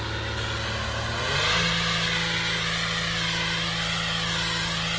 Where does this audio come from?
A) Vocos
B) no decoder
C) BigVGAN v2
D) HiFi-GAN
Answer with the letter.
B